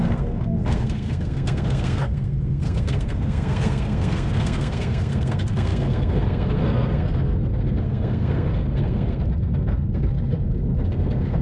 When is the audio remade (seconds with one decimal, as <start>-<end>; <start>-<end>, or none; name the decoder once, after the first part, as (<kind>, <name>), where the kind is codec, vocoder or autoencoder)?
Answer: 0.0-11.4 (codec, SNAC)